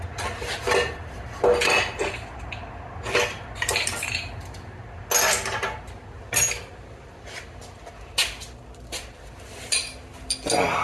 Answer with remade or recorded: recorded